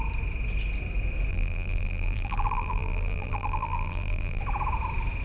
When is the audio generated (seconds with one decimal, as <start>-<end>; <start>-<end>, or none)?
1.3-4.4